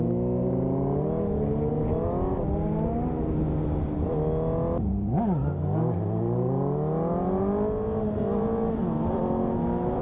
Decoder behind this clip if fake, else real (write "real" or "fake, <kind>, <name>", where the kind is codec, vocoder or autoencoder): real